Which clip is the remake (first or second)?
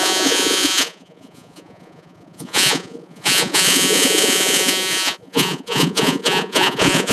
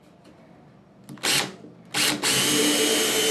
first